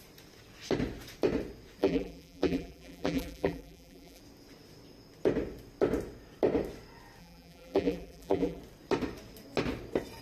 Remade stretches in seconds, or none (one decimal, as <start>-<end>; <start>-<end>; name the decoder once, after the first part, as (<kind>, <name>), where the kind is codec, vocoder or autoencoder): 1.8-4.2 (vocoder, BigVGAN v2); 7.2-8.6